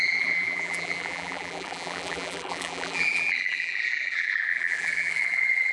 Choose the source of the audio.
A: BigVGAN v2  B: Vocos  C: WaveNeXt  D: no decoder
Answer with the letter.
A